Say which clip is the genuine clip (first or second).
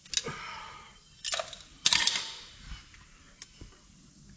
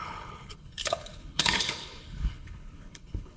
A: first